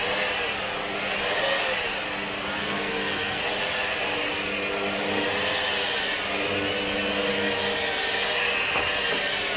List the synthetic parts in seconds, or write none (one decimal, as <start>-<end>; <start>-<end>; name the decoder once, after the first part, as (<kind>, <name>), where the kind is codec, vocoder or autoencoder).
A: 2.6-3.4 (codec, SNAC)